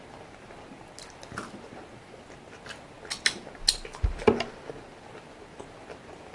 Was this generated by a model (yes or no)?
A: no